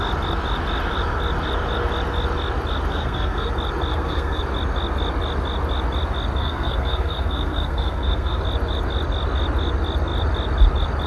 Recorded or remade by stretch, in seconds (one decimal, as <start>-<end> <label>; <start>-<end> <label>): 0.0-2.9 recorded; 2.9-3.5 remade; 3.5-3.9 recorded; 3.9-4.4 remade; 4.4-6.4 recorded; 6.4-8.4 remade; 8.4-11.1 recorded